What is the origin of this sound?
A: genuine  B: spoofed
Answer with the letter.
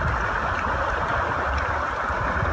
A